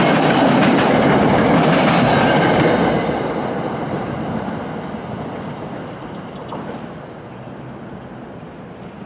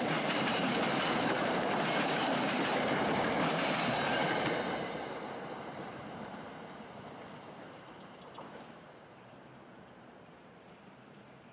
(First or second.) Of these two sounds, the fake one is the second